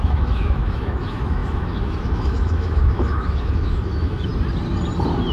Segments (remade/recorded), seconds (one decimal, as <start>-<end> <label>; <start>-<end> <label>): 0.0-4.3 remade; 4.3-5.3 recorded